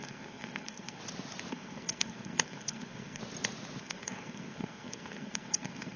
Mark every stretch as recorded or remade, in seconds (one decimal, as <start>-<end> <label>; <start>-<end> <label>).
0.0-1.0 remade; 1.0-1.5 recorded; 1.5-3.2 remade; 3.2-3.8 recorded; 3.8-6.0 remade